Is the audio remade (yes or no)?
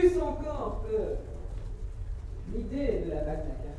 no